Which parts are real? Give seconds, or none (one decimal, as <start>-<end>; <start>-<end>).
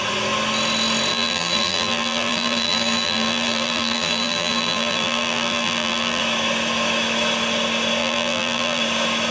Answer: 0.0-1.1; 6.2-8.0; 8.8-9.3